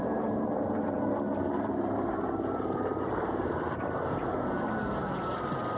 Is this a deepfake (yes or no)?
yes